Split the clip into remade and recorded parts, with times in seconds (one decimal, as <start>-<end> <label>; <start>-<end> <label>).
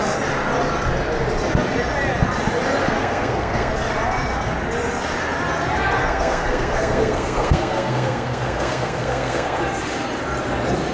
0.0-2.8 recorded; 2.8-3.7 remade; 3.7-6.0 recorded; 6.0-9.6 remade; 9.6-10.9 recorded